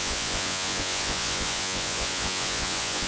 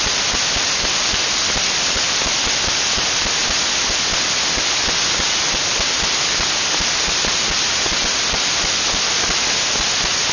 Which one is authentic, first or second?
second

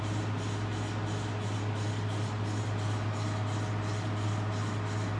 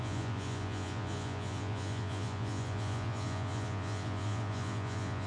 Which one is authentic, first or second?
first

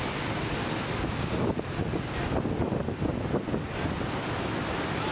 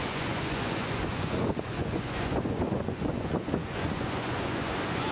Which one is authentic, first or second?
first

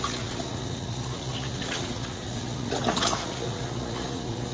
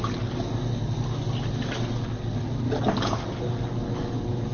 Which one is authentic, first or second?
second